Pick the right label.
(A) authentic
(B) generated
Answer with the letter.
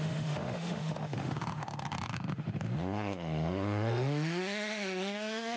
B